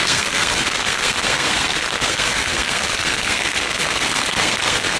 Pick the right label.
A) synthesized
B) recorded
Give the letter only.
A